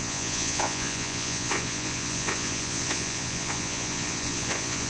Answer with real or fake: fake